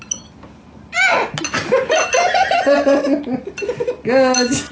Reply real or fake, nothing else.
real